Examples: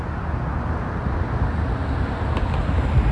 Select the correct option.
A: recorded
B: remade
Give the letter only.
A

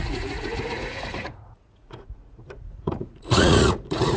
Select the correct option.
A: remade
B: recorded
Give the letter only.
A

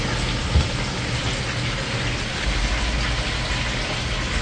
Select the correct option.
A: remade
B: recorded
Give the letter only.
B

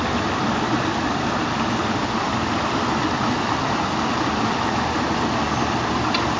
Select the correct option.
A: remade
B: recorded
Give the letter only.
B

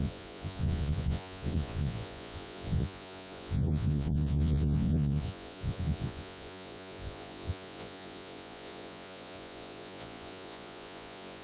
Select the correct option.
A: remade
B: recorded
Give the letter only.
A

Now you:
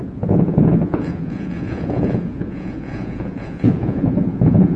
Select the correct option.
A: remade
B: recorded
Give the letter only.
A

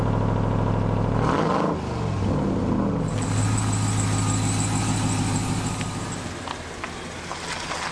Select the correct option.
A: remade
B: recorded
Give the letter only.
B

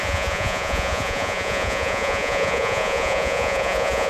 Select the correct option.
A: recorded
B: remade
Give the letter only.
B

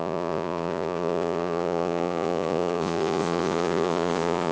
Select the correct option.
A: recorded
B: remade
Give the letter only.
B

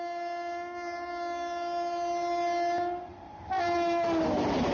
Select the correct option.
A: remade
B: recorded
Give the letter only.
B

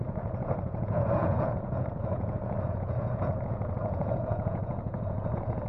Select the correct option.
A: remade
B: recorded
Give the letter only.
A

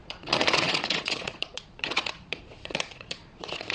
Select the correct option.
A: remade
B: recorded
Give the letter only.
A